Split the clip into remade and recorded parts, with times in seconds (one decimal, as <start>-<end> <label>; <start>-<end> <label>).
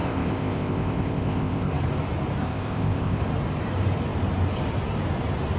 0.0-1.7 remade; 1.7-2.4 recorded; 2.4-3.2 remade; 3.2-5.6 recorded